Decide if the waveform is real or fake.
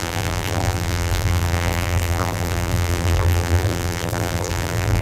fake